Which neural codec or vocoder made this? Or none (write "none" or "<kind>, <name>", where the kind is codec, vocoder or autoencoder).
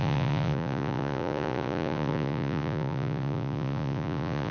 vocoder, Vocos